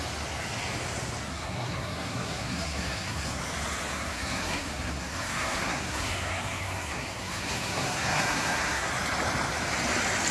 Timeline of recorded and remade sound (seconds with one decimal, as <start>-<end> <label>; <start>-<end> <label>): 0.0-1.3 recorded; 1.3-3.4 remade; 3.4-3.9 recorded; 3.9-8.9 remade; 8.9-10.3 recorded